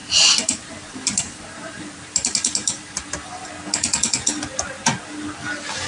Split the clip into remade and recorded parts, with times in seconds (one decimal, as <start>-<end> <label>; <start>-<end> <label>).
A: 0.0-3.5 remade; 3.5-5.9 recorded